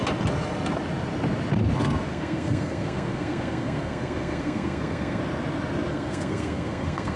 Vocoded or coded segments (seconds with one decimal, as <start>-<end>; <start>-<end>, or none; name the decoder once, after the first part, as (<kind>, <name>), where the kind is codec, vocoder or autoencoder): 2.1-5.2 (codec, SNAC); 5.9-7.2